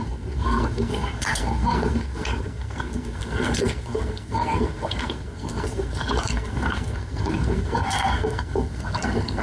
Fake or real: fake